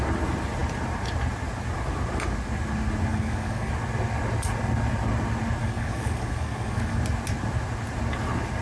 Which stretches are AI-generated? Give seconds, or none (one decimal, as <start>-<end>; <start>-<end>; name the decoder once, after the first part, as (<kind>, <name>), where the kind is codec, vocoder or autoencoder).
3.1-3.7 (codec, DAC); 5.6-7.0